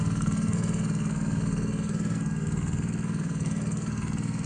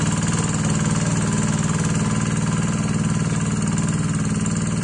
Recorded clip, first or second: second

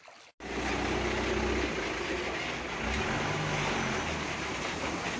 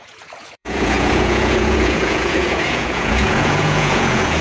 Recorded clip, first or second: first